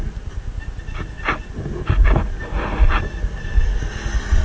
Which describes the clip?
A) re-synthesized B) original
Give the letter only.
B